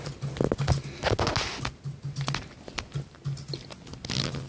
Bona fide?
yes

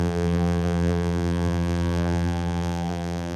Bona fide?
no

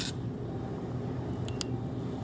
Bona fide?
yes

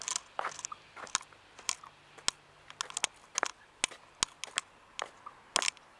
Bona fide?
yes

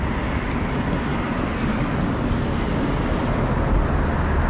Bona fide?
yes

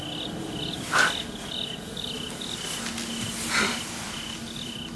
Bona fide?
yes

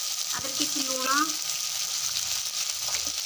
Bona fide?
yes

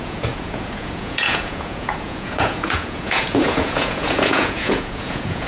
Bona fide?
no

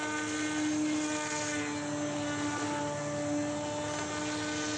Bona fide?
yes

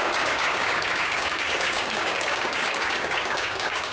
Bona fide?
no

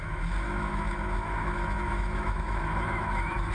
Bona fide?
no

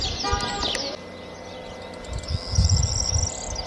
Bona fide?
yes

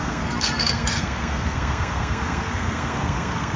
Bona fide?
no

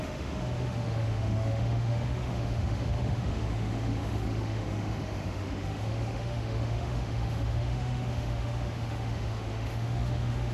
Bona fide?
no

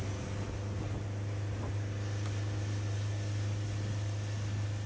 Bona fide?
yes